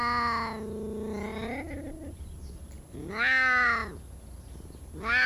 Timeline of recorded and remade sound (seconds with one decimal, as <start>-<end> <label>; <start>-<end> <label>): 0.0-5.3 recorded